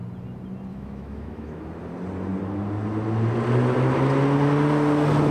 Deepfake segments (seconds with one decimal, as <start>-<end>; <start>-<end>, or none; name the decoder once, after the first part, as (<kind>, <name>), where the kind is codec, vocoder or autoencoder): 0.7-1.6 (autoencoder, DAC-VAE)